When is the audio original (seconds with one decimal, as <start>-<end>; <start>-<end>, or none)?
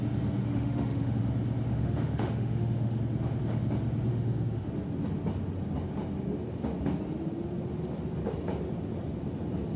0.0-0.4; 1.2-1.7; 3.0-4.1; 4.7-9.8